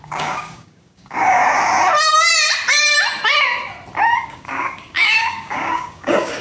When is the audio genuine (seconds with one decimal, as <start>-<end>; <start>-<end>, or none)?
1.4-4.2